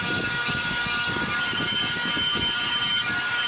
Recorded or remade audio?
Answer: remade